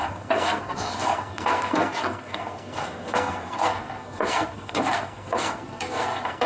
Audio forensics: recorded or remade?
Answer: remade